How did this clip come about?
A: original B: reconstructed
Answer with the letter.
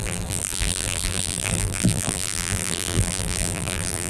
B